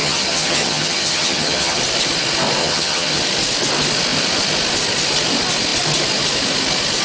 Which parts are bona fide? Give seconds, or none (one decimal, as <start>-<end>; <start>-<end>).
1.8-2.6; 3.2-7.0